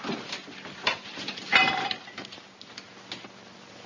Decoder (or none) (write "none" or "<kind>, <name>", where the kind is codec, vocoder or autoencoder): none